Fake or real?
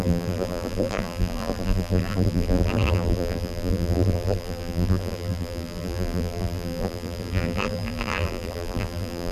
fake